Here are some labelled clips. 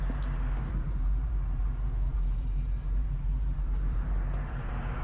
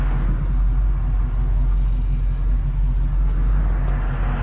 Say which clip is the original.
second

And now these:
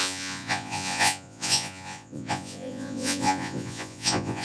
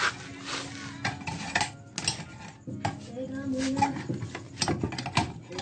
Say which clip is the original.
second